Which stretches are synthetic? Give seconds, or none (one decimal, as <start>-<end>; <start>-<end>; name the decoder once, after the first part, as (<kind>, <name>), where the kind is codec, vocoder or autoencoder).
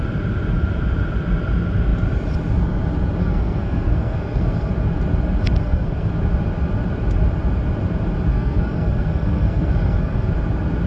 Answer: 3.2-4.7 (codec, SNAC); 5.6-6.1; 8.3-10.3